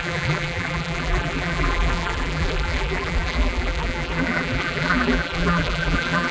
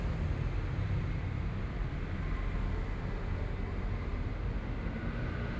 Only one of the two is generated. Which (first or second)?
first